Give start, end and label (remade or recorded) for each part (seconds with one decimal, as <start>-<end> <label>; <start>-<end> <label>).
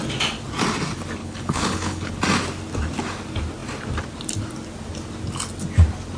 0.0-1.2 recorded; 1.2-2.1 remade; 2.1-6.2 recorded